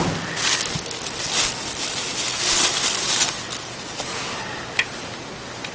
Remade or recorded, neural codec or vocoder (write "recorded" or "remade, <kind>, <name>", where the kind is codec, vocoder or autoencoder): recorded